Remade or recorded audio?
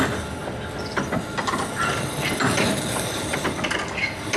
recorded